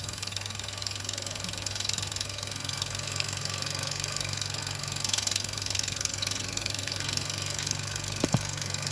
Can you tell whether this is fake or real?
fake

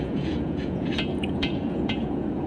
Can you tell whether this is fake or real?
fake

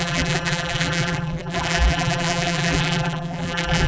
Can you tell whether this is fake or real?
fake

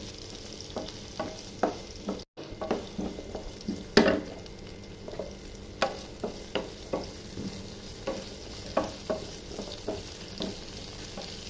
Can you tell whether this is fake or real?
real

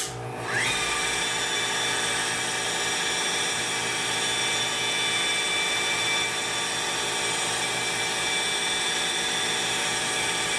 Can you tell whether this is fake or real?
real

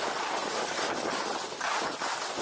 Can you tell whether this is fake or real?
real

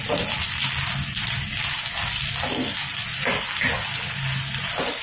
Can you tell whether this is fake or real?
real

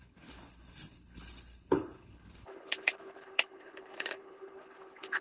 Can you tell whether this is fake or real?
fake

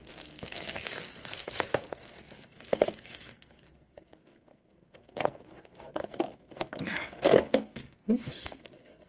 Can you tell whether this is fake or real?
fake